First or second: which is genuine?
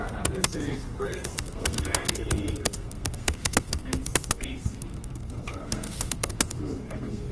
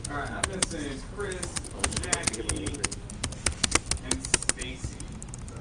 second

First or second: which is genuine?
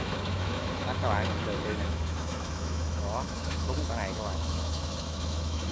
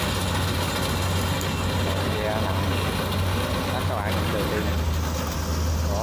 second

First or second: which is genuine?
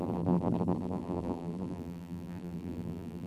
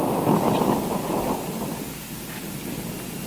second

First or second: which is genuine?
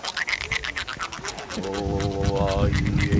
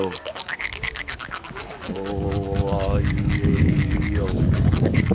first